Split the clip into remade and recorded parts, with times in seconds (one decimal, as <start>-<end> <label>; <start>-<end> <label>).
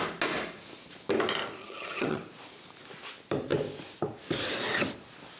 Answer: 0.0-1.6 recorded; 1.6-2.2 remade; 2.2-5.4 recorded